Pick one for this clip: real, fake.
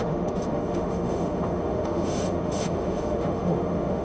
fake